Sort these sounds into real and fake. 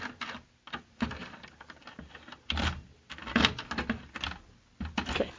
real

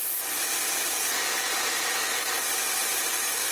real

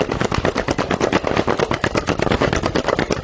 real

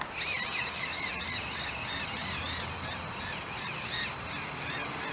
real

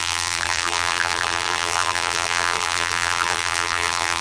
fake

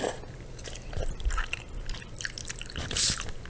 real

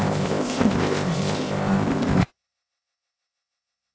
fake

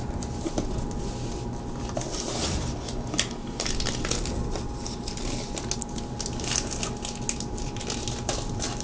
real